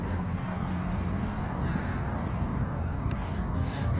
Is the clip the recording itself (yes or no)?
no